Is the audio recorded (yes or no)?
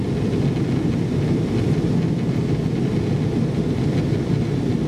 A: yes